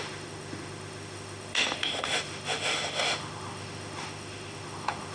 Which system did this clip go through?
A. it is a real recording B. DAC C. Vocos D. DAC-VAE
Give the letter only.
D